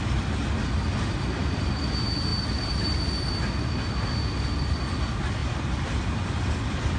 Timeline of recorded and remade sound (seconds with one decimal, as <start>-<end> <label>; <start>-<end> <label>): 0.0-7.0 recorded